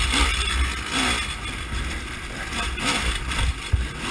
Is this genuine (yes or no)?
yes